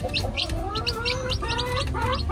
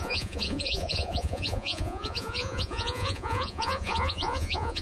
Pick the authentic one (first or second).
first